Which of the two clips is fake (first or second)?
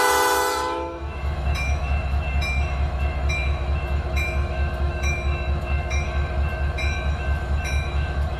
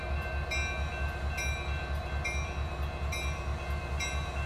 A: first